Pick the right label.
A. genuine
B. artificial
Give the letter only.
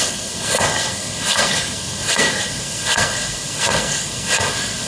B